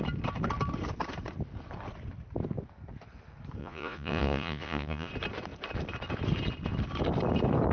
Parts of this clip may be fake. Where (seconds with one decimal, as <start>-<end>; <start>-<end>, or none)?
3.6-5.1